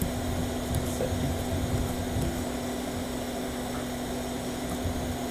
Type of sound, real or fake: real